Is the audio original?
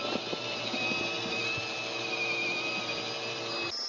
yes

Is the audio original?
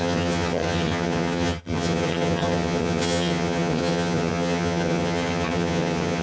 no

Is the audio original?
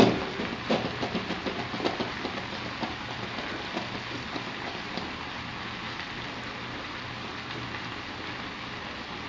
yes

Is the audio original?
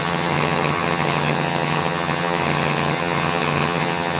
no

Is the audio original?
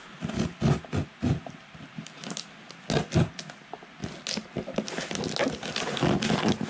yes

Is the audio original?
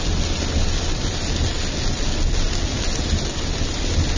yes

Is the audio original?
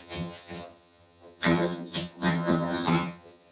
no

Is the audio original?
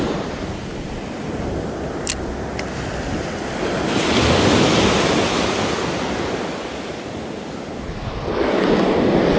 yes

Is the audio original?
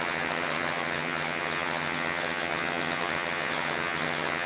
no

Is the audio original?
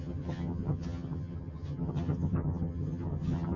no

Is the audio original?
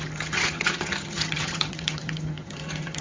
no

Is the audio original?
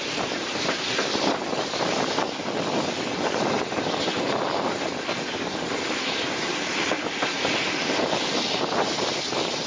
yes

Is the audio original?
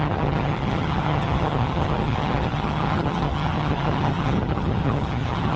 no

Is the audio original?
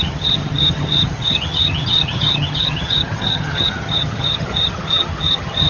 no